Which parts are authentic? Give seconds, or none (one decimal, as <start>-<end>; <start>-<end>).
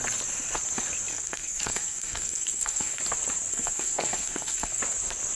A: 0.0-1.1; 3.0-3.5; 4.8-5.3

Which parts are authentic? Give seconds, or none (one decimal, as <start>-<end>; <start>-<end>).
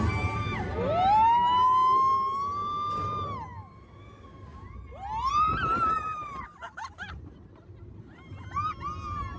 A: 0.0-9.4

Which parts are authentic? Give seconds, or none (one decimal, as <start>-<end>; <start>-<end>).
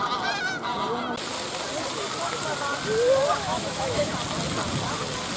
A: 0.0-3.4; 4.1-5.4